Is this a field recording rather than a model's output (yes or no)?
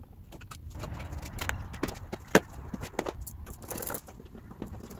yes